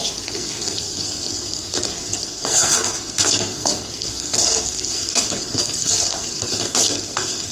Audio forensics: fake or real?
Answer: fake